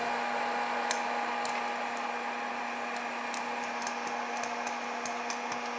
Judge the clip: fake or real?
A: real